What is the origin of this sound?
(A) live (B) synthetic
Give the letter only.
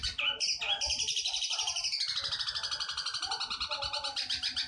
A